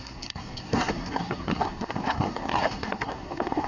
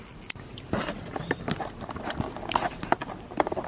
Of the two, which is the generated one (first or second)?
first